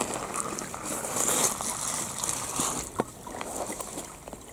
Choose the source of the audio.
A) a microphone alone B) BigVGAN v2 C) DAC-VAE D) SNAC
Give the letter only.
B